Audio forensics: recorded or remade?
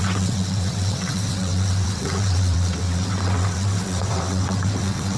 remade